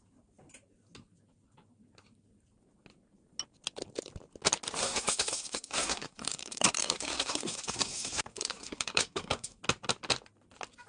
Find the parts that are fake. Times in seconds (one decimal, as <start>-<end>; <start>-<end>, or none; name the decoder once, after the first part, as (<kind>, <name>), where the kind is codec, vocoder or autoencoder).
4.8-9.6 (codec, SNAC)